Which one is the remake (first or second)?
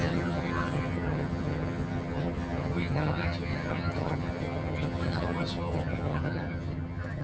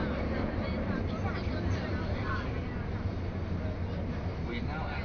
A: first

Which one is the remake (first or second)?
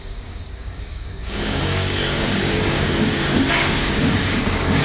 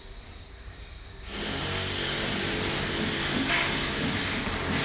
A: first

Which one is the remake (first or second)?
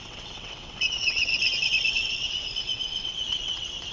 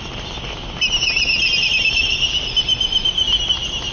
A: first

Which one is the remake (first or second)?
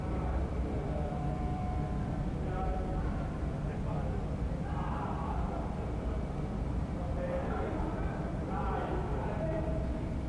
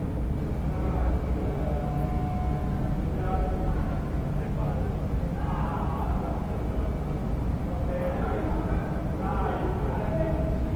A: first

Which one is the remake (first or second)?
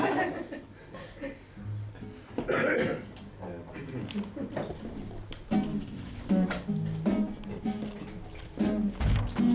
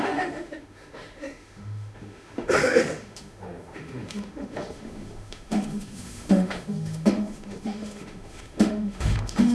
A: second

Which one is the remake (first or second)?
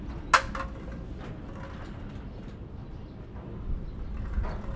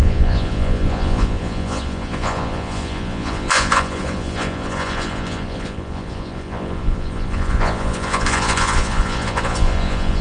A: second